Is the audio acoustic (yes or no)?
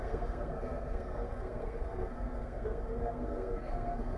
no